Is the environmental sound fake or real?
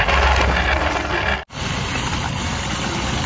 real